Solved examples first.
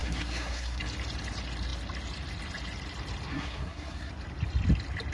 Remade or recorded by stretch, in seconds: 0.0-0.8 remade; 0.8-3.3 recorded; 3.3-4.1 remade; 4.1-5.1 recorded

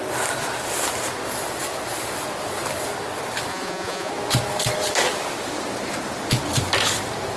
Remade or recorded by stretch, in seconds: 0.0-3.5 recorded; 3.5-4.1 remade; 4.1-7.4 recorded

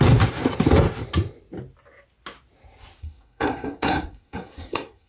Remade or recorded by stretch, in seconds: 0.0-3.0 recorded; 3.0-5.1 remade

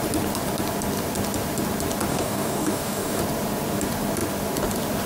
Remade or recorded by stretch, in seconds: 0.0-2.1 recorded; 2.1-3.2 remade; 3.2-5.1 recorded

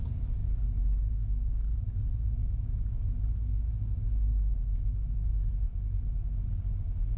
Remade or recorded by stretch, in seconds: 0.0-7.2 recorded

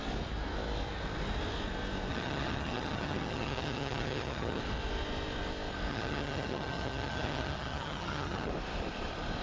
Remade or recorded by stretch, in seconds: 0.0-2.1 recorded; 2.1-4.6 remade; 4.6-5.9 recorded; 5.9-8.5 remade; 8.5-9.4 recorded

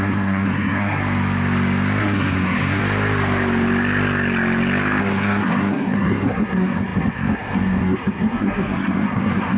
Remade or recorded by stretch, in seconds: 0.0-1.0 remade; 1.0-2.0 recorded; 2.0-2.8 remade; 2.8-5.0 recorded; 5.0-9.6 remade